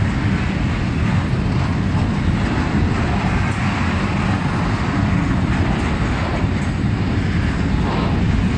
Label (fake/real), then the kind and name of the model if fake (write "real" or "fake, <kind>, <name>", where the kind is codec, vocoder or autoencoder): real